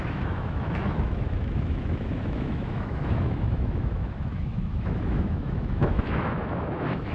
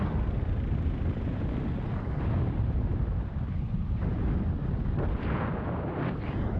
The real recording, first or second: second